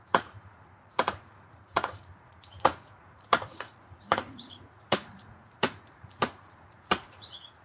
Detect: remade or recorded remade